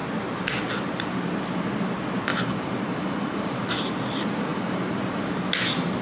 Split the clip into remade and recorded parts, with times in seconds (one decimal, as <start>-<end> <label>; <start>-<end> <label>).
0.0-2.3 recorded; 2.3-3.9 remade; 3.9-4.5 recorded; 4.5-5.2 remade; 5.2-6.0 recorded

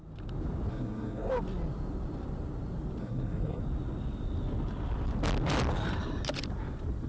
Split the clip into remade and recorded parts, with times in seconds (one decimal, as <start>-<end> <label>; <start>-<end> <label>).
0.0-0.7 recorded; 0.7-1.3 remade; 1.3-3.0 recorded; 3.0-3.6 remade; 3.6-7.1 recorded

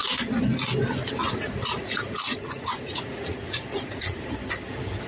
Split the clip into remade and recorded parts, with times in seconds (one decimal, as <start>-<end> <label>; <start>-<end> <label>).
0.0-1.2 recorded; 1.2-4.3 remade; 4.3-5.1 recorded